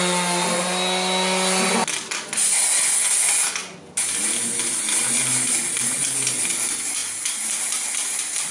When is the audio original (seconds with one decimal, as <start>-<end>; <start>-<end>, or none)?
0.0-8.5